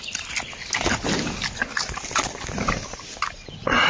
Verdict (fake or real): real